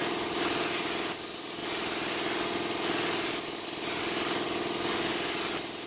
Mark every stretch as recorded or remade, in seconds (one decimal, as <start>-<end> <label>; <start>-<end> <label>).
0.0-5.9 recorded